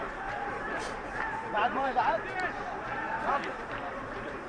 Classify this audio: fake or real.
fake